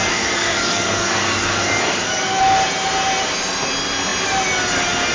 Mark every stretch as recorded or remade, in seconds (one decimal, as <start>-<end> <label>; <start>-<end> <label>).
0.0-2.4 remade; 2.4-5.1 recorded

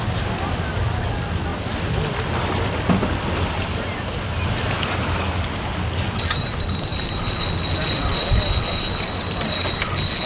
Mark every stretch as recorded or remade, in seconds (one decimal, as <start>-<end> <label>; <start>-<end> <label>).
0.0-10.3 recorded